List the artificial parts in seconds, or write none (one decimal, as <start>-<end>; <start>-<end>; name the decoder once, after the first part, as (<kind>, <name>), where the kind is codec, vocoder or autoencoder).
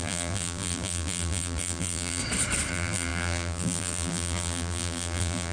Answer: 0.0-2.2 (vocoder, BigVGAN v2); 2.7-5.5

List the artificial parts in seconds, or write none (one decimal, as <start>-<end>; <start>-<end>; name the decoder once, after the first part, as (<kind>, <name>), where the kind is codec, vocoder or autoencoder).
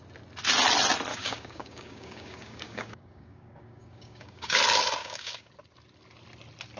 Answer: 1.1-4.6 (codec, DAC); 5.0-5.5